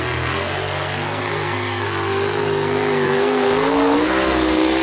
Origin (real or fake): fake